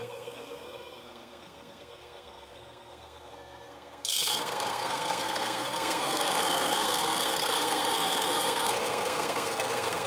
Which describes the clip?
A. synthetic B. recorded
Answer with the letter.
A